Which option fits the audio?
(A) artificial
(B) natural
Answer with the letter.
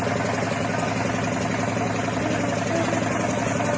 B